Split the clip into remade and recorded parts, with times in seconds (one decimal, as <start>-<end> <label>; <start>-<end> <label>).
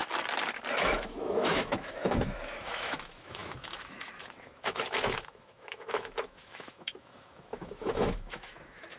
0.0-0.8 recorded; 0.8-9.0 remade